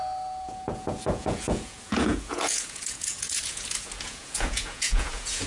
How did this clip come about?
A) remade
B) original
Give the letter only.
A